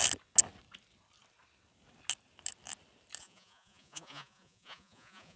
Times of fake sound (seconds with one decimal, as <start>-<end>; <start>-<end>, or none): 3.2-5.4